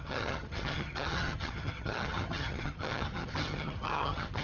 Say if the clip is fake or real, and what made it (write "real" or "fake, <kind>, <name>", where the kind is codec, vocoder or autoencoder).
fake, vocoder, HiFi-GAN